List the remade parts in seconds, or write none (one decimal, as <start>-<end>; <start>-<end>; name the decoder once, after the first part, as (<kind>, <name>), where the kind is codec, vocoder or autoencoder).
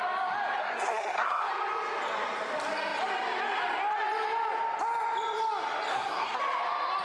0.6-1.5 (codec, SNAC); 5.9-6.4